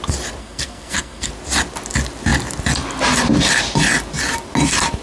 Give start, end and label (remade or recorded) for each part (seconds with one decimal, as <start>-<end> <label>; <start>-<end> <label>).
0.0-0.4 recorded; 0.4-1.3 remade; 1.3-5.0 recorded